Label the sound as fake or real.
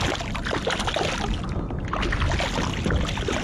real